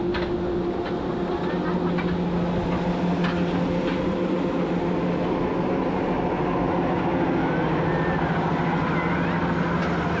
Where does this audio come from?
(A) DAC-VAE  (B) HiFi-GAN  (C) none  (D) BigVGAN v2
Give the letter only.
C